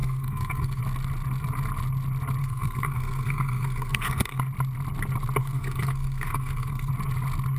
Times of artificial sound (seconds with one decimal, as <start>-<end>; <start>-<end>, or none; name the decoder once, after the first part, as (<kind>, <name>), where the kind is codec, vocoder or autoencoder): 0.0-0.8 (codec, SNAC); 2.4-4.4; 5.4-6.9